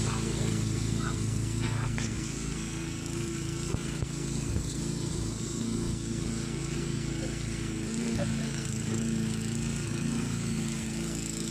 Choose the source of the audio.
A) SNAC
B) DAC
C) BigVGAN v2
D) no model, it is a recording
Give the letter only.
A